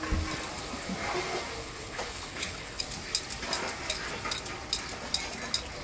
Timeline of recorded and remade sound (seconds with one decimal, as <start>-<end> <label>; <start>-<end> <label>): 0.0-1.6 recorded; 1.6-2.8 remade; 2.8-5.8 recorded